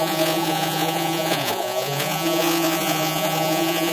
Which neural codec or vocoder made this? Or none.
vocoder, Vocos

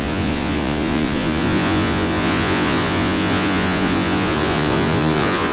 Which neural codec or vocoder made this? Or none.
vocoder, Vocos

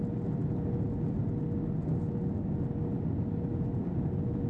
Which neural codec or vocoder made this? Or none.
none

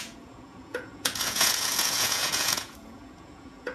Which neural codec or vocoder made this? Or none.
vocoder, Vocos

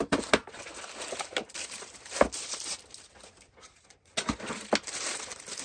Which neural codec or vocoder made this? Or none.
none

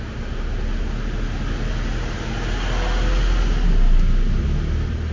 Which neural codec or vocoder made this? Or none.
none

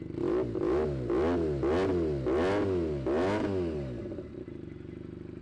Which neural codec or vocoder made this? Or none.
none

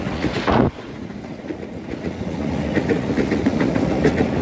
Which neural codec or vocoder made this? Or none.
vocoder, Vocos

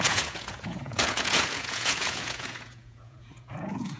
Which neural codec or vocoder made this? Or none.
vocoder, Vocos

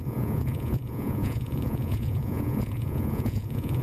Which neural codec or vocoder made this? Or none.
vocoder, Vocos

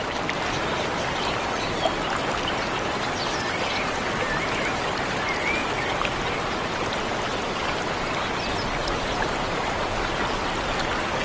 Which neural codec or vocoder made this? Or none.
none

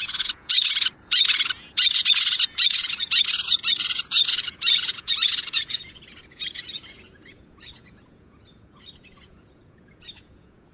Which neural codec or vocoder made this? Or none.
vocoder, Vocos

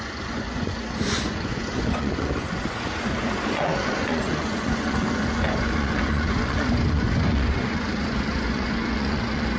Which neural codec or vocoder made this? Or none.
vocoder, Vocos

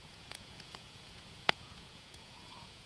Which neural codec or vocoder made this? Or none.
vocoder, Vocos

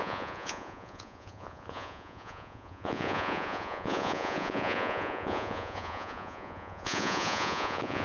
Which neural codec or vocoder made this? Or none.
vocoder, Vocos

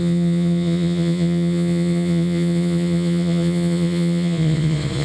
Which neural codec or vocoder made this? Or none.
vocoder, Vocos